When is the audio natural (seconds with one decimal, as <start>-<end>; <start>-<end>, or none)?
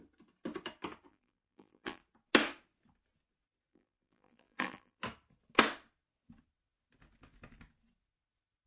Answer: 0.0-1.1; 2.0-3.7; 5.0-8.7